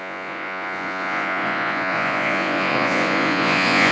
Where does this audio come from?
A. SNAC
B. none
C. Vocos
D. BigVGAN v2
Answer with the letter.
C